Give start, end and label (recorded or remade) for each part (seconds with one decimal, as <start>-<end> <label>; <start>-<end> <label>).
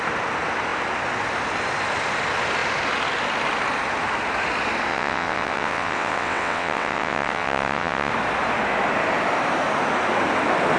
0.0-4.9 recorded; 4.9-8.1 remade; 8.1-10.8 recorded